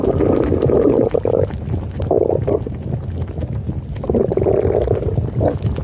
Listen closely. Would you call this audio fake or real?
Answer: real